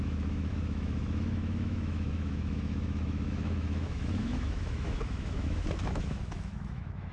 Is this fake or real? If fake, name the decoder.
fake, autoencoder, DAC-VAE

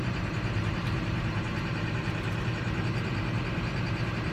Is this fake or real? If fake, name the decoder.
fake, vocoder, BigVGAN v2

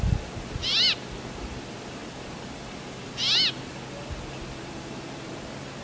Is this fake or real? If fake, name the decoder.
real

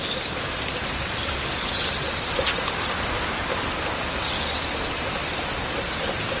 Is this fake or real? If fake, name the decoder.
fake, vocoder, BigVGAN v2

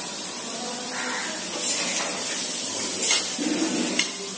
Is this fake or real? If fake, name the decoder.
real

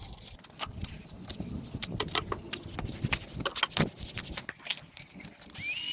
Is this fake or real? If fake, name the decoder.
real